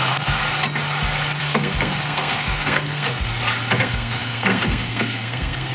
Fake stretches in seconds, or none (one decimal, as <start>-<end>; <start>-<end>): 0.0-0.4; 1.4-3.3; 3.8-5.7